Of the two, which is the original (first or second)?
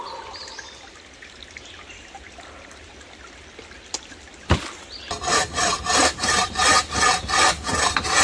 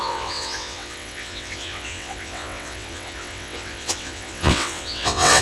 first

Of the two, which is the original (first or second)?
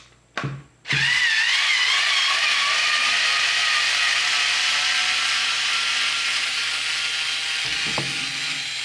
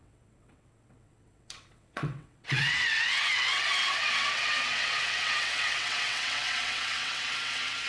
first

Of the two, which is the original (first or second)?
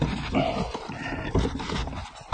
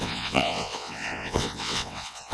first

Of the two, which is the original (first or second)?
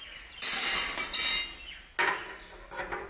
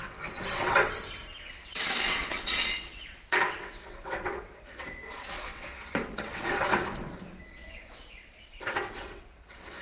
first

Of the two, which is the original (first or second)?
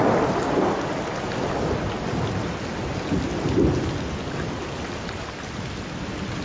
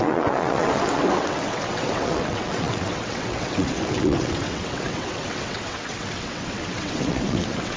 first